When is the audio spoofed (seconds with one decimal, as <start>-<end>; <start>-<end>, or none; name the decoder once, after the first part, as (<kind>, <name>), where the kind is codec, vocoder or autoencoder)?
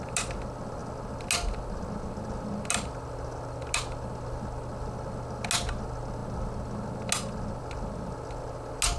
none